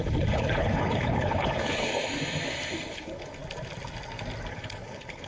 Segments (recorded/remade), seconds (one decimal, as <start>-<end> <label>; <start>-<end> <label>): 0.0-1.9 remade; 1.9-2.9 recorded; 2.9-3.4 remade; 3.4-4.5 recorded; 4.5-5.3 remade